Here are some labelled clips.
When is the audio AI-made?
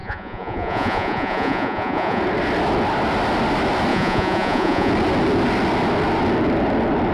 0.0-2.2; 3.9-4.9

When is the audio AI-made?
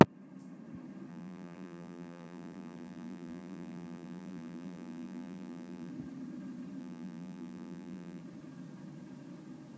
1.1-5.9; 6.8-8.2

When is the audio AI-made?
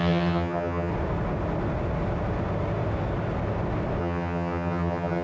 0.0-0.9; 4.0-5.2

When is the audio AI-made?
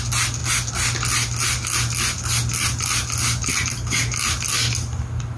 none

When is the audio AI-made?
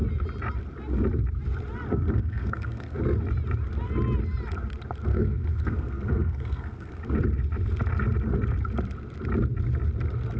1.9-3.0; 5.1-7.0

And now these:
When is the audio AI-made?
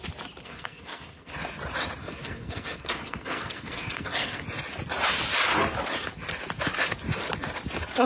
0.4-1.3; 2.0-4.4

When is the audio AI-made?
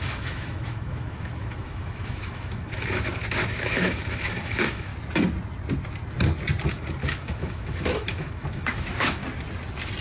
0.0-4.9; 6.7-9.2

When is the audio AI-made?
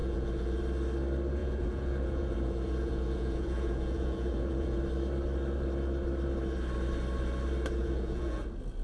0.0-0.6; 1.4-4.8; 7.8-8.4